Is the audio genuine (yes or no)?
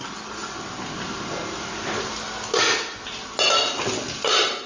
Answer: yes